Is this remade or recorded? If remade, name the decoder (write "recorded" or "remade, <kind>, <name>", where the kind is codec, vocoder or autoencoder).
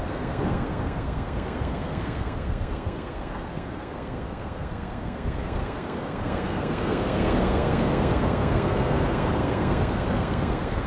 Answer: remade, codec, SNAC